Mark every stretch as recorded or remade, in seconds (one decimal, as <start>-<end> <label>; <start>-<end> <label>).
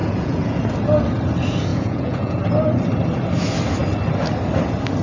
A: 0.0-0.6 remade; 0.6-1.7 recorded; 1.7-2.4 remade; 2.4-5.0 recorded